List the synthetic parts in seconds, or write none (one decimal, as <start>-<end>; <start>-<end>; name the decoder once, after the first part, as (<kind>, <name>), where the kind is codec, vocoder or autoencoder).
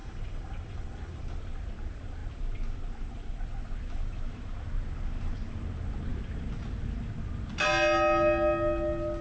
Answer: 0.0-1.2 (vocoder, BigVGAN v2)